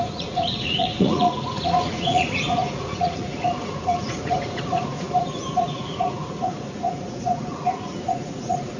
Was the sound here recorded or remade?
remade